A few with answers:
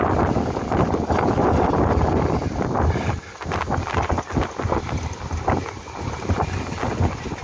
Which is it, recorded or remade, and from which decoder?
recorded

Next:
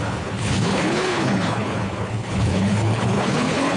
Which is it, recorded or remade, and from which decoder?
remade, codec, HILCodec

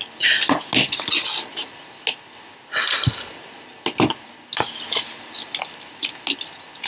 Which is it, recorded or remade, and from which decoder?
recorded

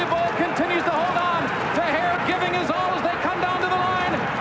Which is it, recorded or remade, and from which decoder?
recorded